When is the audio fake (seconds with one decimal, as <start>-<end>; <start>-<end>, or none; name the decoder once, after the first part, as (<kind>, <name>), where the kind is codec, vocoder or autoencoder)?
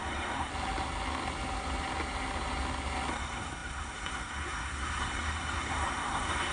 0.0-0.5 (codec, SNAC); 3.1-6.5